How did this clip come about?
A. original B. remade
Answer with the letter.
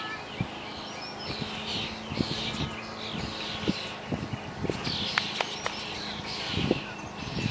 A